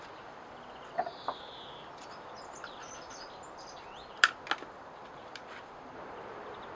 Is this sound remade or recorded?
recorded